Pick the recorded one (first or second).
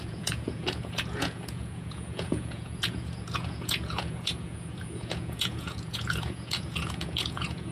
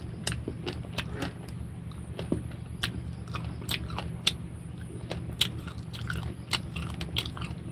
second